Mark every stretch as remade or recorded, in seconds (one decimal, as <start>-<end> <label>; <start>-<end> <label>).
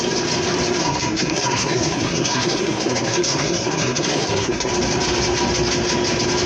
0.0-0.8 recorded; 0.8-4.7 remade; 4.7-6.5 recorded